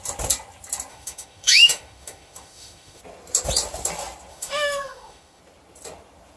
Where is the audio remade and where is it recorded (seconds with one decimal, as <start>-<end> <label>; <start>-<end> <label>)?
0.0-0.9 recorded; 0.9-3.0 remade; 3.0-4.3 recorded; 4.3-5.4 remade; 5.4-6.4 recorded